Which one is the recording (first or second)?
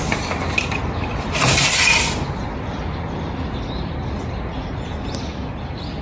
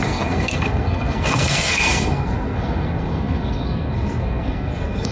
first